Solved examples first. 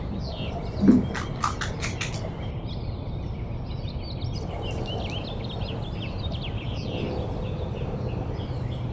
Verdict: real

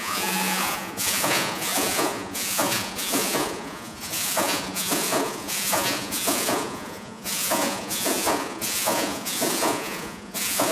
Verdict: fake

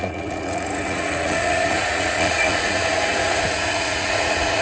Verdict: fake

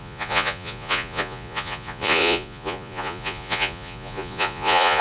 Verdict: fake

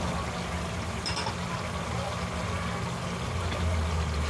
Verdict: real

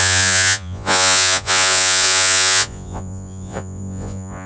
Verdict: fake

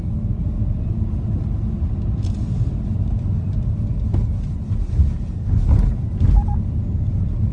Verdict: real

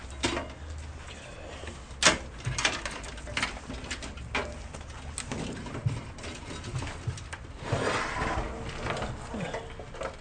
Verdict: real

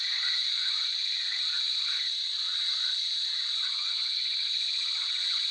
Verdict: fake